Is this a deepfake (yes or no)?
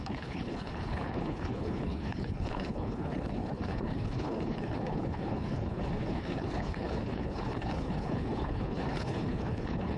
yes